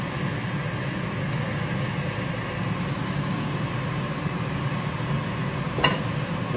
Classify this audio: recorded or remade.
recorded